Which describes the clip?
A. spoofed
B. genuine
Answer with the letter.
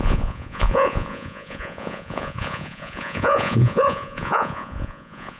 A